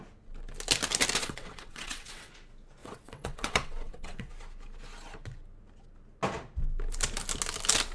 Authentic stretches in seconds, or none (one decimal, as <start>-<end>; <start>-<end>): 0.0-1.2; 2.3-2.8; 4.3-7.9